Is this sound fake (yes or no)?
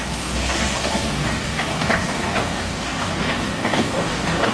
yes